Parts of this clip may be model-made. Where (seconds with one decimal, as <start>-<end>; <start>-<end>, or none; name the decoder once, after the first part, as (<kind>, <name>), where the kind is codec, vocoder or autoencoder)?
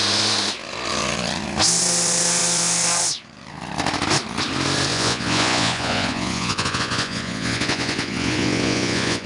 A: 4.9-9.3 (vocoder, Vocos)